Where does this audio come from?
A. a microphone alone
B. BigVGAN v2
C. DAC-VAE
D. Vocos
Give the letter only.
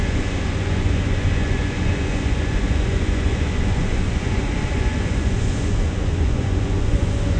D